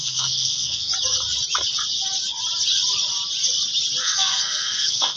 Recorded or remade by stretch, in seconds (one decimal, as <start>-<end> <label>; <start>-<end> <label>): 0.0-0.9 remade; 0.9-4.0 recorded; 4.0-5.2 remade